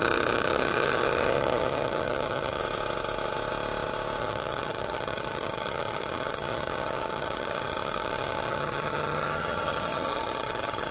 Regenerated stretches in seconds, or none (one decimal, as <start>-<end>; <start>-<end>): 0.0-2.6; 4.2-10.9